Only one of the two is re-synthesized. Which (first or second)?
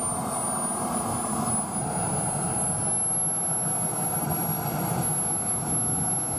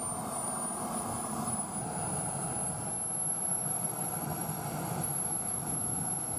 second